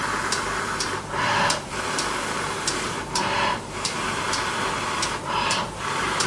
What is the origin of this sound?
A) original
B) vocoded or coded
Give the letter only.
B